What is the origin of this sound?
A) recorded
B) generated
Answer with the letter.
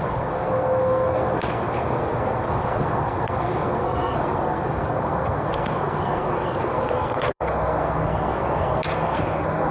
B